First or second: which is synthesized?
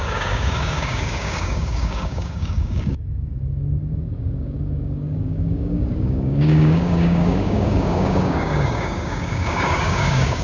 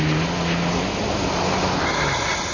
first